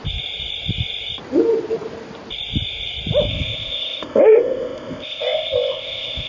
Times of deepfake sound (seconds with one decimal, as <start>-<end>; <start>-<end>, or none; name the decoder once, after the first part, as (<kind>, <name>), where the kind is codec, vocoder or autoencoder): 3.3-6.3 (codec, ZipCodec)